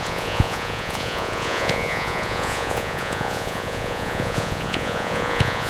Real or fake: fake